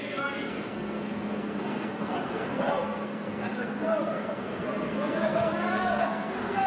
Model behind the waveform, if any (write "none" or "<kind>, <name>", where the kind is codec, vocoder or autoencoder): codec, SNAC